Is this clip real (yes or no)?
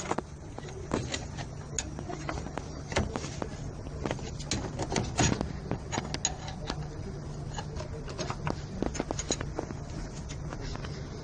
yes